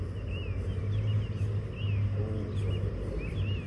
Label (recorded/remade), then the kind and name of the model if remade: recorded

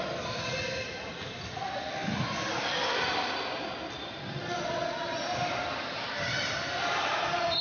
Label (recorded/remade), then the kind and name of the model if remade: recorded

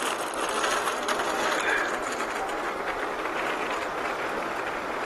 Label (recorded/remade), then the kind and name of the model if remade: recorded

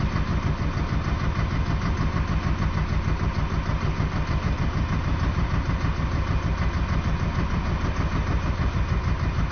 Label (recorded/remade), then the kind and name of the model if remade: recorded